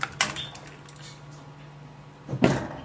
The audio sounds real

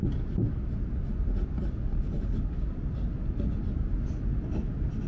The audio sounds real